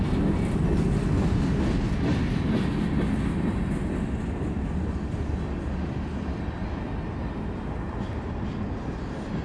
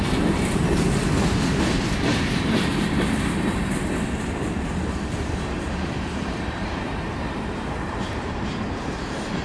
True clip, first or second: first